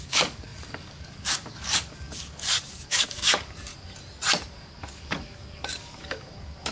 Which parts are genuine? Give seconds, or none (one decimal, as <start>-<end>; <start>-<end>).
3.7-4.5